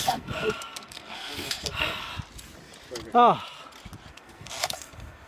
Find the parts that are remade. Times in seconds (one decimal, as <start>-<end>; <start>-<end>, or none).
0.0-2.1; 4.1-5.3